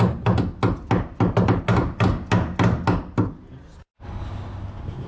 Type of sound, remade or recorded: recorded